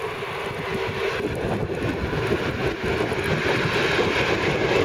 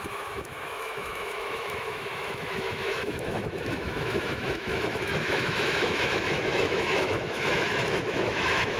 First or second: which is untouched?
first